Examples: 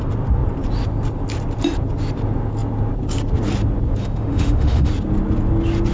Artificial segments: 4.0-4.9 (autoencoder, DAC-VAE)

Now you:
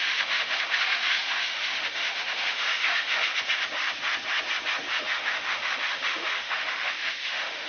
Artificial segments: 0.0-3.3 (autoencoder, DAC-VAE); 4.9-7.7

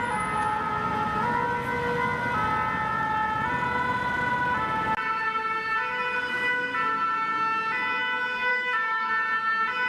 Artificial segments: 8.5-9.1 (autoencoder, DAC-VAE)

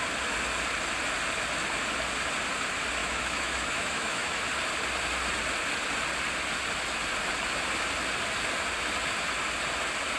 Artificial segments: 3.0-4.4 (autoencoder, DAC-VAE)